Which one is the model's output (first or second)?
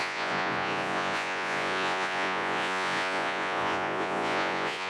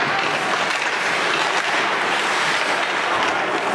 first